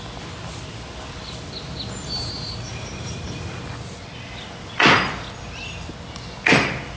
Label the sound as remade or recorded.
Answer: recorded